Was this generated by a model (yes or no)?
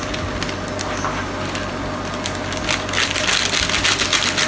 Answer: no